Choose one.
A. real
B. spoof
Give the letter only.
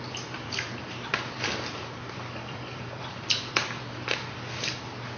B